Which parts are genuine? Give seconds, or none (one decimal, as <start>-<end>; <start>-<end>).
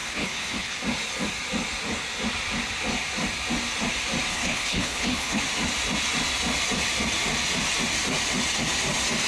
0.8-4.3; 5.4-9.3